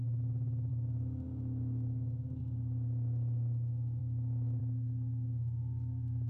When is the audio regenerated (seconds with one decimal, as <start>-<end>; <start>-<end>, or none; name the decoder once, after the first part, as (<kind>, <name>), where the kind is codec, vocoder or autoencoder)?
0.7-2.4 (autoencoder, DAC-VAE); 4.0-4.6